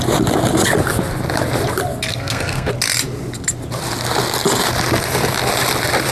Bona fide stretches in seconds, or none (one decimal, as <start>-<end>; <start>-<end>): 0.0-2.1; 2.7-6.1